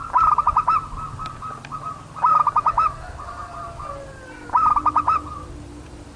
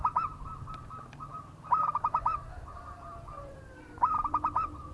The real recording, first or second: first